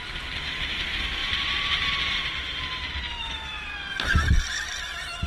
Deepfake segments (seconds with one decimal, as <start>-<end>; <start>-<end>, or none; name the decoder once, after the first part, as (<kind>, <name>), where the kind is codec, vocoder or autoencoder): 1.2-2.9 (vocoder, BigVGAN v2)